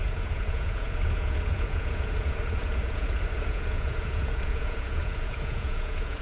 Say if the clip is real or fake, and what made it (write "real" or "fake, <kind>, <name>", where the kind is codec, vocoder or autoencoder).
fake, vocoder, Vocos